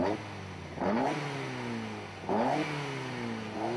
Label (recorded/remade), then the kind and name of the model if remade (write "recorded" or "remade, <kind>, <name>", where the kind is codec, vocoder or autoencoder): recorded